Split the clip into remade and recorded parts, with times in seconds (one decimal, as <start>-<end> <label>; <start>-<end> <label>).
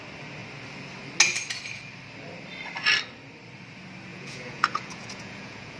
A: 0.0-4.1 recorded; 4.1-5.8 remade